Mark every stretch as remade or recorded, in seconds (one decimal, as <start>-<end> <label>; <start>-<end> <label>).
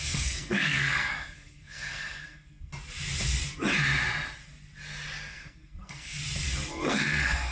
0.0-2.7 remade; 2.7-5.3 recorded; 5.3-6.2 remade; 6.2-6.7 recorded; 6.7-7.5 remade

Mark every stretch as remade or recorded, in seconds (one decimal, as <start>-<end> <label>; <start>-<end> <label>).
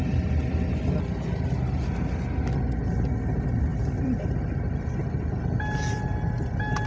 0.0-3.7 recorded; 3.7-4.9 remade; 4.9-6.9 recorded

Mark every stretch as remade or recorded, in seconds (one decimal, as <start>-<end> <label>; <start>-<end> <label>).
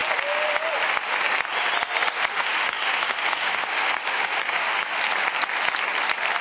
0.0-2.3 recorded; 2.3-5.0 remade; 5.0-6.4 recorded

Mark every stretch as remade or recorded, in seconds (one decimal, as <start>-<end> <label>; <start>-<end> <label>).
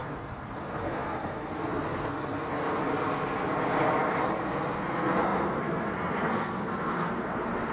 0.0-2.8 remade; 2.8-4.4 recorded; 4.4-7.7 remade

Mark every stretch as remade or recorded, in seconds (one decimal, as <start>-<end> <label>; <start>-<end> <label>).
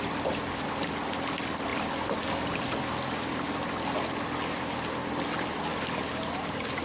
0.0-6.8 recorded